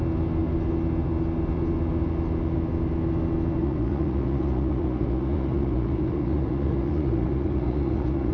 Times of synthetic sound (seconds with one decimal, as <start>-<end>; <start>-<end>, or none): 3.6-8.3